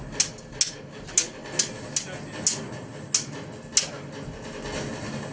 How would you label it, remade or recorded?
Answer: recorded